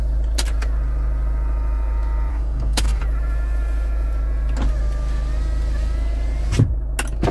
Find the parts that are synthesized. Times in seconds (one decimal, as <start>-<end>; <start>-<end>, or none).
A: 2.3-3.0

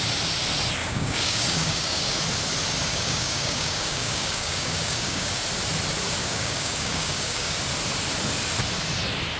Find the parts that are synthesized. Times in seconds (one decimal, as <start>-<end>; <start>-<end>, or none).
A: 0.8-2.2; 2.9-5.4; 6.2-7.6